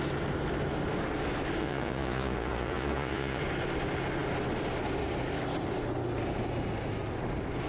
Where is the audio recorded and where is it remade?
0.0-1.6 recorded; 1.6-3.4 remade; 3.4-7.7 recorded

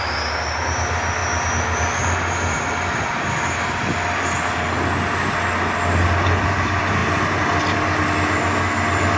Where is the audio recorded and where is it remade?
0.0-9.2 recorded

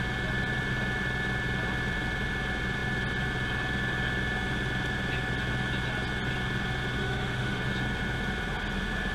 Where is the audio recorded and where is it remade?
0.0-7.0 recorded; 7.0-7.6 remade; 7.6-9.1 recorded

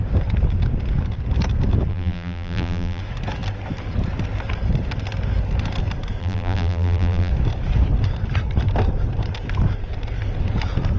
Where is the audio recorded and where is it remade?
0.0-1.9 recorded; 1.9-3.0 remade; 3.0-6.2 recorded; 6.2-7.3 remade; 7.3-11.0 recorded

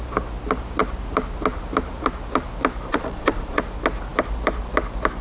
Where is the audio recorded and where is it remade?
0.0-2.9 recorded; 2.9-3.6 remade; 3.6-5.2 recorded